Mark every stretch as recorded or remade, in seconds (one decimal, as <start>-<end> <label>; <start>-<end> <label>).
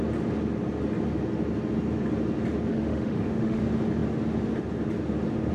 0.0-2.7 recorded; 2.7-3.6 remade; 3.6-5.5 recorded